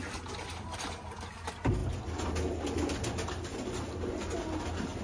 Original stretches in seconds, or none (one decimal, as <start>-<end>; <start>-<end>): 0.0-5.0